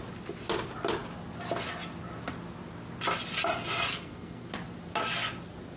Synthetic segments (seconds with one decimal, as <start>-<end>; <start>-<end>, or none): 3.9-4.5